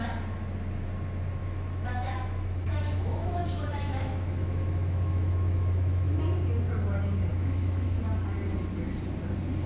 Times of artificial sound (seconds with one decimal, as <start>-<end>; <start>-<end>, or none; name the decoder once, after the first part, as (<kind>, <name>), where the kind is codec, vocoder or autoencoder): 1.4-6.2 (autoencoder, DAC-VAE); 7.3-8.0